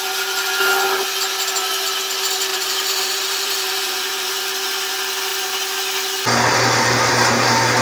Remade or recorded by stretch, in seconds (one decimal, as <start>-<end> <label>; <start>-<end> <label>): 0.0-2.5 recorded; 2.5-4.4 remade; 4.4-7.8 recorded